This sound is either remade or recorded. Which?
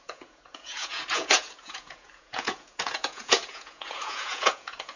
remade